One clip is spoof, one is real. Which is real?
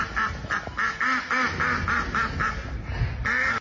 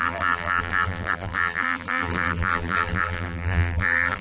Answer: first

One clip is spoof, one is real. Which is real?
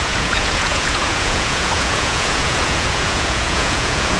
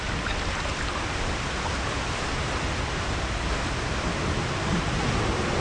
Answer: second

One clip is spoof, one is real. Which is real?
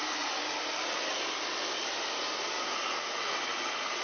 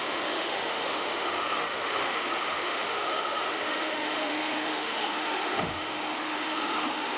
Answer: first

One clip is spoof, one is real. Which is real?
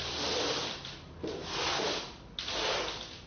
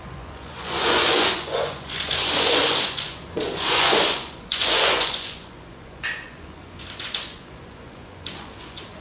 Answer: first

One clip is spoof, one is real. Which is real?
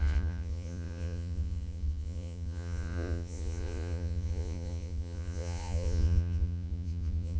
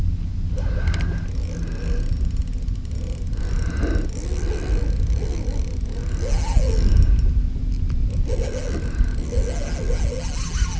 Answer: second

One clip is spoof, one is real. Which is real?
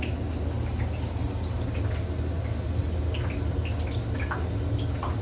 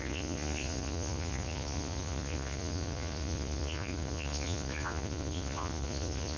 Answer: first